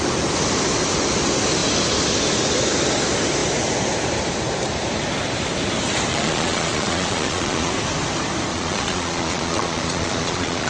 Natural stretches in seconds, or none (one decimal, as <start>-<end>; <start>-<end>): 0.0-6.1; 7.7-8.5